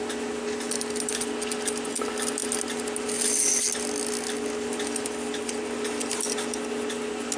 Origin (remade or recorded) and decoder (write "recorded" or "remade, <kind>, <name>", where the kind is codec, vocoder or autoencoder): recorded